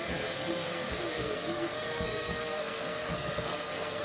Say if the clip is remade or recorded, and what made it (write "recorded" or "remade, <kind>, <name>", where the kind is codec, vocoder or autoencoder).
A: remade, codec, SNAC